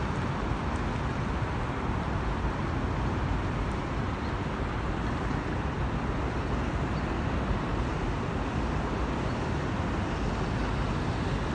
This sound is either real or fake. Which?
real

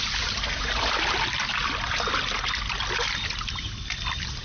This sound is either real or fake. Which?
real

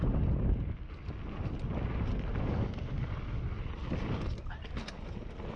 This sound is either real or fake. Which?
real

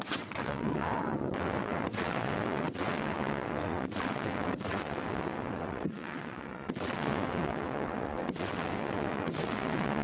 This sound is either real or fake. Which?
fake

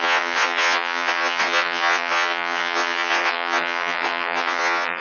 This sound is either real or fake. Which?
fake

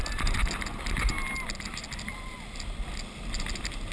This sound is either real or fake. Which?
real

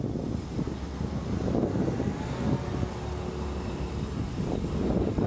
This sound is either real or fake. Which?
real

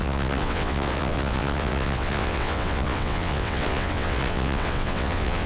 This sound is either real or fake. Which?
fake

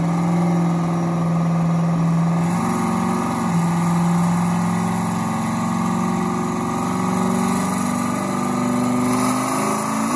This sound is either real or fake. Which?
real